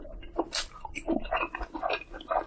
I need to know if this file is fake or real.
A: real